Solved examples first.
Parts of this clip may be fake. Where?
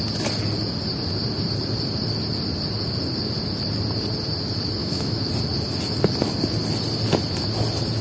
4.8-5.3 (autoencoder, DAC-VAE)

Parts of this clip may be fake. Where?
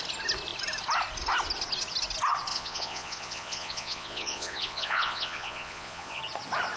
2.5-6.2 (vocoder, Vocos)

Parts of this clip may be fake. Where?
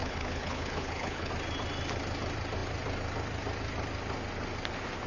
0.0-1.3 (codec, HILCodec)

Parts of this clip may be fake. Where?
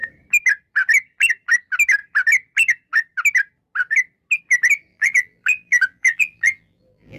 4.9-7.2 (vocoder, BigVGAN v2)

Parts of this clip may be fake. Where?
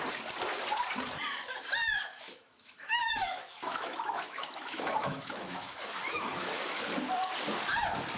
1.9-6.8 (autoencoder, DAC-VAE)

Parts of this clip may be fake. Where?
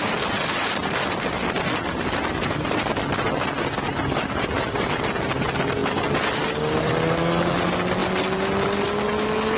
none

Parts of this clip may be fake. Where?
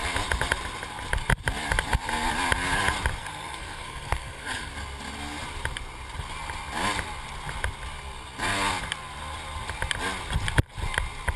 3.2-4.7 (codec, SNAC)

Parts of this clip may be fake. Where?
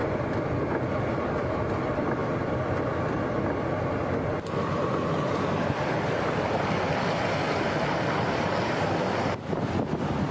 none